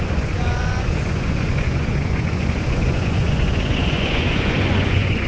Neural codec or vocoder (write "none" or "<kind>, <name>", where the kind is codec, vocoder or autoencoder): vocoder, Vocos